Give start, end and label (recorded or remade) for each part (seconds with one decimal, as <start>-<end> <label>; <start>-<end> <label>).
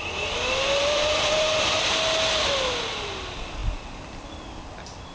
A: 0.0-0.8 recorded; 0.8-1.8 remade; 1.8-5.1 recorded